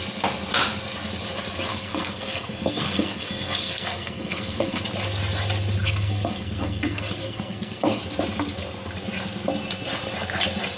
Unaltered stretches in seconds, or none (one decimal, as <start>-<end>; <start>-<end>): 0.0-1.7; 4.8-5.8; 8.0-10.8